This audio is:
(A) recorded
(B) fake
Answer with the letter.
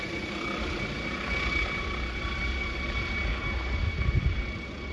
A